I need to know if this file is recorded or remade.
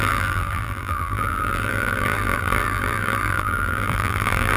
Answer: remade